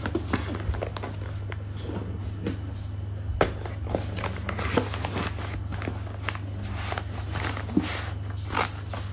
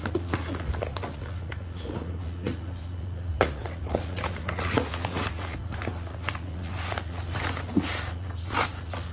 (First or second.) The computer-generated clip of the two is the second